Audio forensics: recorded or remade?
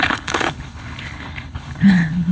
remade